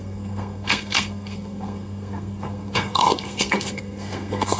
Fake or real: fake